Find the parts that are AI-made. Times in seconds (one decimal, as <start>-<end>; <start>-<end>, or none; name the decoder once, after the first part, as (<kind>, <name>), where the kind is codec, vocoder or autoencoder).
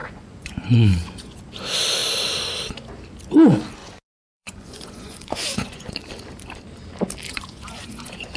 0.0-1.4 (vocoder, Vocos); 3.8-6.0; 7.3-8.4